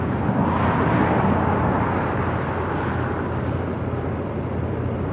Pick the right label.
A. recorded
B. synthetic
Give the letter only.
A